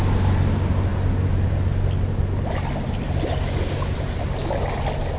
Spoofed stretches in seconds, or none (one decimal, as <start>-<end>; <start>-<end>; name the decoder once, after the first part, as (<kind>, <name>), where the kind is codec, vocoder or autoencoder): none